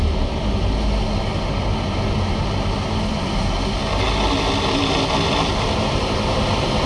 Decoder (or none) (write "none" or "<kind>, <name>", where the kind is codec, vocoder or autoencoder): none